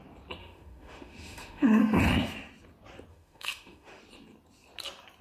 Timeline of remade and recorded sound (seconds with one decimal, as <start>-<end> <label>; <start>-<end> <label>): 0.0-0.4 recorded; 0.4-2.0 remade; 2.0-3.1 recorded; 3.1-4.0 remade; 4.0-5.2 recorded